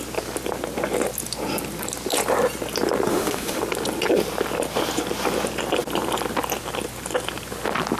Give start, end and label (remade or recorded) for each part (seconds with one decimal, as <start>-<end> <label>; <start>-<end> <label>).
0.0-3.1 recorded; 3.1-3.6 remade; 3.6-8.0 recorded